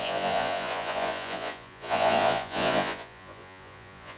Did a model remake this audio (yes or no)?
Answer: yes